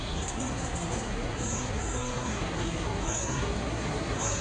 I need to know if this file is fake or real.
fake